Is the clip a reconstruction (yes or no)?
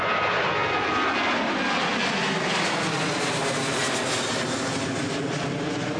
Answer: no